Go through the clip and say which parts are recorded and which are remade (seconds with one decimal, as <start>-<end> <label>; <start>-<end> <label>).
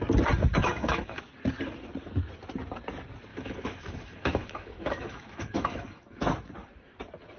0.0-0.5 recorded; 0.5-1.2 remade; 1.2-3.3 recorded; 3.3-6.3 remade; 6.3-7.4 recorded